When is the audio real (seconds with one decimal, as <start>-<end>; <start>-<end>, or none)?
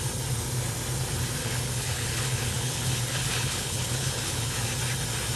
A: 0.0-1.4; 4.6-5.4